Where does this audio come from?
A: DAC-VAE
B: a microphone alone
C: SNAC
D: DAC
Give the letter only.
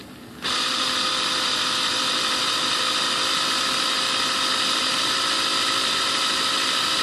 B